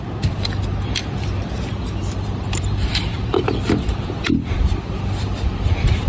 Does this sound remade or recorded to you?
remade